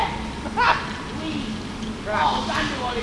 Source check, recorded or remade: recorded